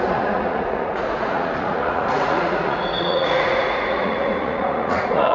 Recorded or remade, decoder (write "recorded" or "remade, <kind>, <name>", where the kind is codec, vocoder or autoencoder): remade, vocoder, Vocos